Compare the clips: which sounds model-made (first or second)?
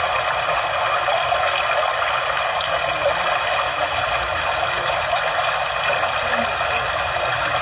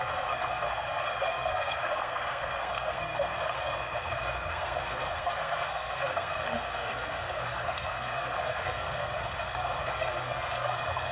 second